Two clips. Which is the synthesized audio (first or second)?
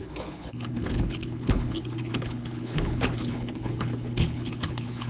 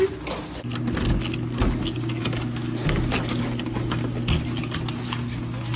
first